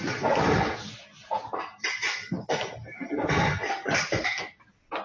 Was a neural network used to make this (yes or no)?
no